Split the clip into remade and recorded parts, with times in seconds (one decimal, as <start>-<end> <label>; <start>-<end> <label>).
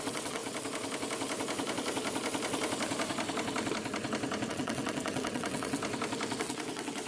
0.0-0.4 remade; 0.4-4.5 recorded; 4.5-5.8 remade; 5.8-6.4 recorded; 6.4-7.1 remade